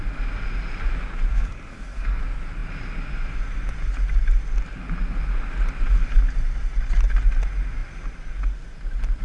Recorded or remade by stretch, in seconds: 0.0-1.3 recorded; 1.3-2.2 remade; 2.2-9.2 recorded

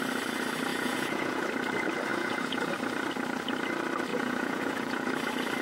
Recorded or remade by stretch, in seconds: 0.0-0.7 recorded; 0.7-1.5 remade; 1.5-2.1 recorded; 2.1-2.7 remade; 2.7-4.1 recorded; 4.1-5.1 remade; 5.1-5.6 recorded

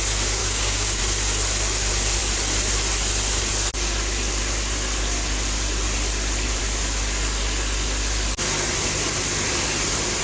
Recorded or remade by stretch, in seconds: 0.0-0.4 recorded; 0.4-1.0 remade; 1.0-10.2 recorded

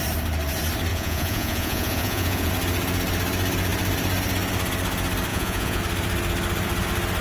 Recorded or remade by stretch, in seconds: 0.0-0.9 recorded; 0.9-2.5 remade; 2.5-5.3 recorded; 5.3-5.8 remade; 5.8-7.2 recorded

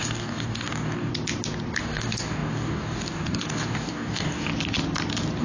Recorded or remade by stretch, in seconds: 0.0-1.1 remade; 1.1-1.8 recorded; 1.8-4.5 remade; 4.5-5.4 recorded